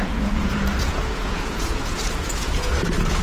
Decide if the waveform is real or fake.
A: fake